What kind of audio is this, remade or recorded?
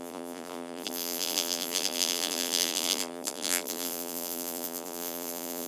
remade